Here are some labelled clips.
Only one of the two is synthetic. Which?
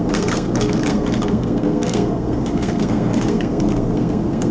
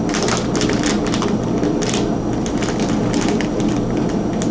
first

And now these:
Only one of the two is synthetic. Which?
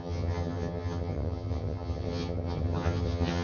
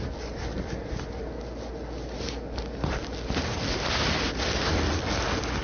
first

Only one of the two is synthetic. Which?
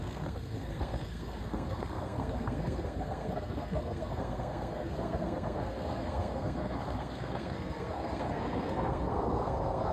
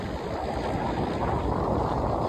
first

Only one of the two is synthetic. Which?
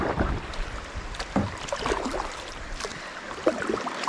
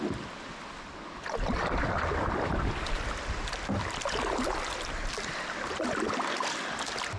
first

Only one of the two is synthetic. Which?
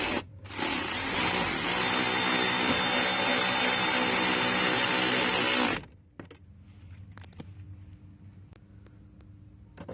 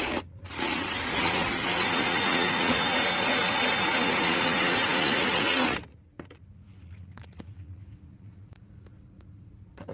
second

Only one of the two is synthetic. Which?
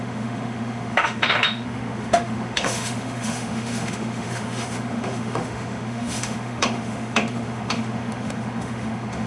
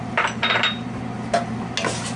first